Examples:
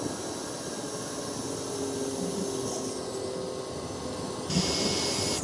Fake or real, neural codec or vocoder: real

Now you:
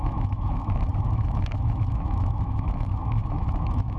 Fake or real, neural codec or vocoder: fake, autoencoder, DAC-VAE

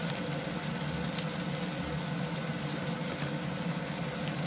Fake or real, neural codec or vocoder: real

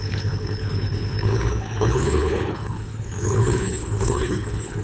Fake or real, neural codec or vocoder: fake, codec, HILCodec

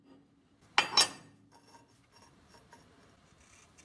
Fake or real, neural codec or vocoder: real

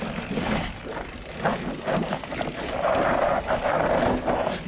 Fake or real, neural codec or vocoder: real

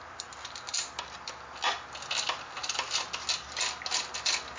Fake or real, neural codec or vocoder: real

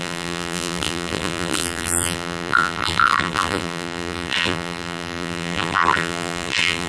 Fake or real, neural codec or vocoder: fake, vocoder, BigVGAN v2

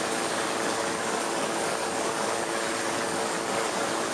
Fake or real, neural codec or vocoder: fake, codec, DAC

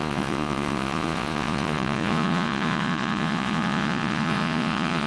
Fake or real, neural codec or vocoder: fake, vocoder, Vocos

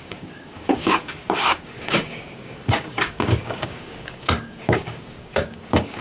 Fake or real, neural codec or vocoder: fake, codec, DAC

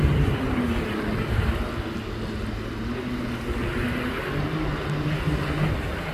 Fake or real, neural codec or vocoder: real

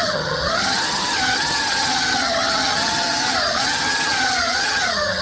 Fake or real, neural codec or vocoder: fake, vocoder, HiFi-GAN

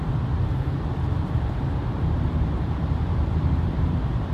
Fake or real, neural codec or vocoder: fake, vocoder, BigVGAN v2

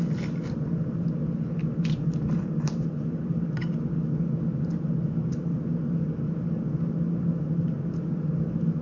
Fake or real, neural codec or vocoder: real